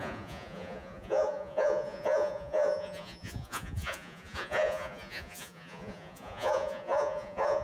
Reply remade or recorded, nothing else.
remade